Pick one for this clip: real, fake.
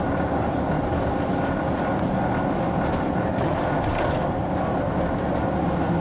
real